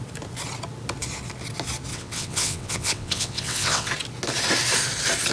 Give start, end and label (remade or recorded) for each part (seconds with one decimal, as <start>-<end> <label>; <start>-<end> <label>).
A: 0.0-1.9 recorded; 1.9-3.9 remade; 3.9-5.3 recorded